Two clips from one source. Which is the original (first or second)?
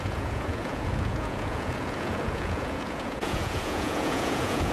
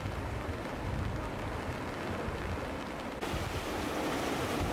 second